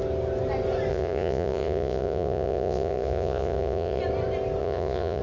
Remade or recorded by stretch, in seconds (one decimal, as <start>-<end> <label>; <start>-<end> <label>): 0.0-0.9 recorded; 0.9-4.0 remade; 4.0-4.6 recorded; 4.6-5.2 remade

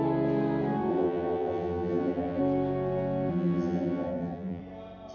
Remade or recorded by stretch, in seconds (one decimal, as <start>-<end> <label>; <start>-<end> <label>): 0.0-0.9 recorded; 0.9-2.4 remade; 2.4-3.3 recorded; 3.3-4.6 remade; 4.6-5.1 recorded

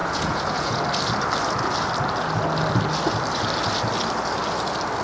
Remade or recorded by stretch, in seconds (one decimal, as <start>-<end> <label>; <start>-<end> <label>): 0.0-0.8 remade; 0.8-5.0 recorded

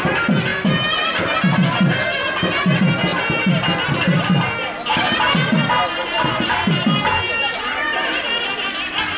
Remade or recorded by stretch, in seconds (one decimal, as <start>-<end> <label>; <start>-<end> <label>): 0.0-9.2 recorded

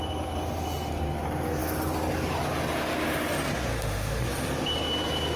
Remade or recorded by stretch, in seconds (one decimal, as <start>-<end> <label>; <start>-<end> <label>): 0.0-3.7 recorded; 3.7-4.2 remade; 4.2-5.4 recorded

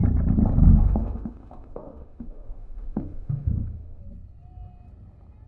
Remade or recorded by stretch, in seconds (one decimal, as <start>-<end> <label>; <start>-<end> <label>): 0.0-0.7 recorded; 0.7-4.0 remade; 4.0-5.5 recorded

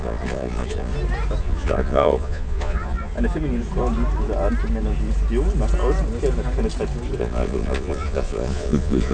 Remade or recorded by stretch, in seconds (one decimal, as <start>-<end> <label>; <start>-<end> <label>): 0.0-0.9 remade; 0.9-1.4 recorded; 1.4-3.1 remade; 3.1-7.2 recorded; 7.2-9.1 remade

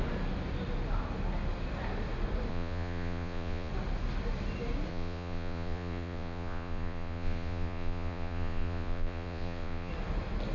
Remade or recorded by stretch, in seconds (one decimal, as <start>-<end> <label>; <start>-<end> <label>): 0.0-2.5 recorded; 2.5-3.7 remade; 3.7-4.9 recorded; 4.9-9.9 remade; 9.9-10.5 recorded